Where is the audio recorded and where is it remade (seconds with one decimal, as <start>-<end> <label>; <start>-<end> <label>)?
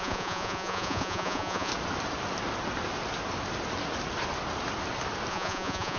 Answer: 0.0-1.7 remade; 1.7-5.3 recorded; 5.3-6.0 remade